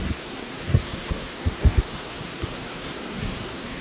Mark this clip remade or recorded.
remade